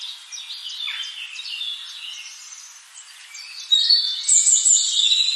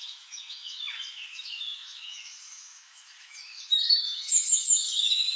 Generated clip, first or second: second